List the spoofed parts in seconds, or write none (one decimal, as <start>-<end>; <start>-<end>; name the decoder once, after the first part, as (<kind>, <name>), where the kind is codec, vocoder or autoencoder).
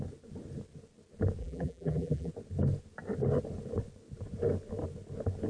1.4-2.3 (vocoder, BigVGAN v2)